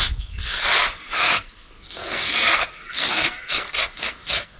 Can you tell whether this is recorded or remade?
remade